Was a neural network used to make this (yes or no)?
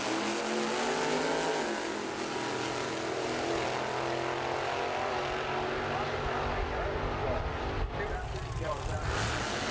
no